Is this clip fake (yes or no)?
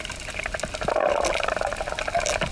no